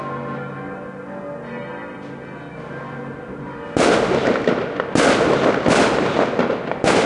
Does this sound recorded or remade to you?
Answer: recorded